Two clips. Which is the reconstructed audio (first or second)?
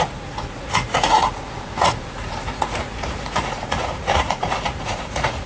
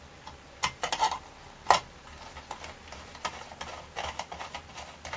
first